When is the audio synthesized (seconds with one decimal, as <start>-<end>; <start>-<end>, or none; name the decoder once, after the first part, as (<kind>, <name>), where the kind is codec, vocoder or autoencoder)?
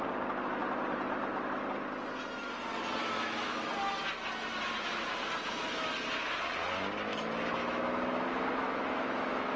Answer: 3.0-3.7 (autoencoder, DAC-VAE); 7.1-9.6